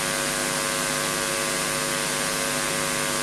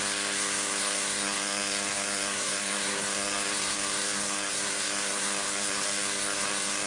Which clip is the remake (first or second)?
second